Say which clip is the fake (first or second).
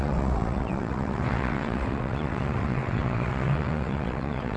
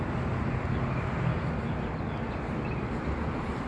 first